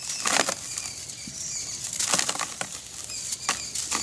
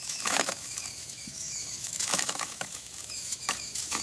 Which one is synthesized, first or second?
second